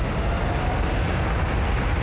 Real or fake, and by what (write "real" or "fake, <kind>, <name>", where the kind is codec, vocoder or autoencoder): real